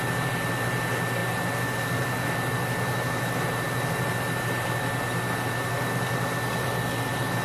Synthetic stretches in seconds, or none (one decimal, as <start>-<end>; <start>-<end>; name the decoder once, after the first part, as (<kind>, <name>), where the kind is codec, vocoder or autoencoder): none